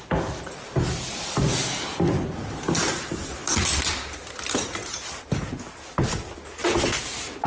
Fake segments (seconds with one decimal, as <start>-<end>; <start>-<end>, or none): none